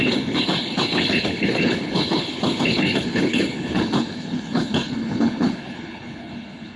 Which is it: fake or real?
fake